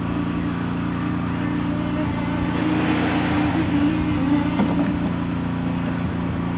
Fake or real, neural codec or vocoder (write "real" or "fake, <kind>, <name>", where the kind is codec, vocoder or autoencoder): real